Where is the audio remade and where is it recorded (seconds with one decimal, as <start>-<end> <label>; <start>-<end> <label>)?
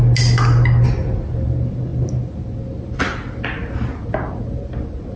0.0-5.2 recorded